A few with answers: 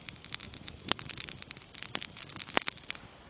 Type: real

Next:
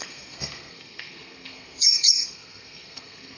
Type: fake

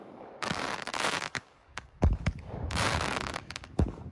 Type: fake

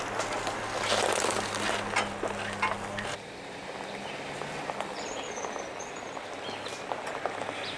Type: real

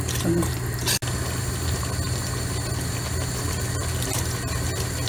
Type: real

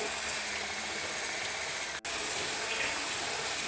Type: real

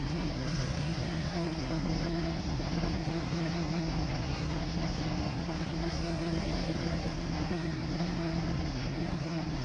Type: fake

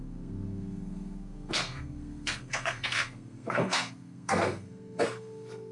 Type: fake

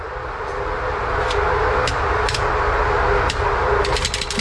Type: real